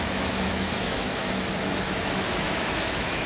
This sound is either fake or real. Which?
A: fake